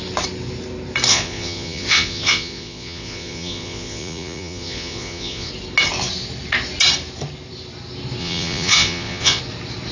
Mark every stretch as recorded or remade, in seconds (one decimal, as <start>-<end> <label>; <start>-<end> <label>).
0.0-1.1 recorded; 1.1-5.5 remade; 5.5-8.2 recorded; 8.2-9.4 remade; 9.4-9.9 recorded